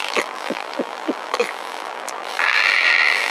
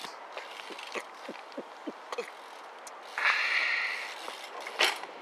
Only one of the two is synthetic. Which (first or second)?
first